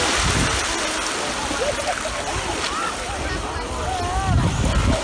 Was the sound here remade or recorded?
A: recorded